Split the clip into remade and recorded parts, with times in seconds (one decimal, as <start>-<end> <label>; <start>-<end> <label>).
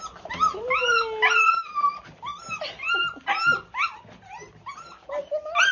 0.0-5.7 recorded